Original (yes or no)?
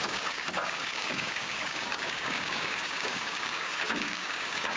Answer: no